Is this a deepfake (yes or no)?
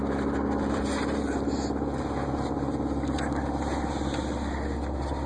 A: no